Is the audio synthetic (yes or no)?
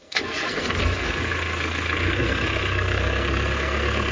yes